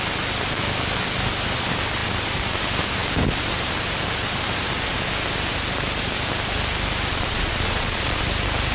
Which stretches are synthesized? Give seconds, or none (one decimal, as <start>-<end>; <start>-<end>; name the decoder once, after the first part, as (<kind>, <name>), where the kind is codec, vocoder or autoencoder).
7.1-8.2 (vocoder, Vocos)